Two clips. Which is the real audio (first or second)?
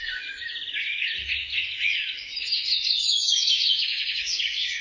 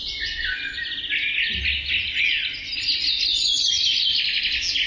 second